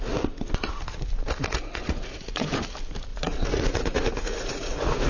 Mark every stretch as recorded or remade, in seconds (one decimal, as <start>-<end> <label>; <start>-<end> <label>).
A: 0.0-1.8 recorded; 1.8-2.6 remade; 2.6-3.1 recorded; 3.1-5.1 remade